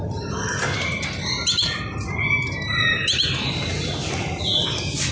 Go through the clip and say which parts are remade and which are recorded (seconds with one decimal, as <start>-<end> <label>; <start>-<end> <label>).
0.0-5.1 recorded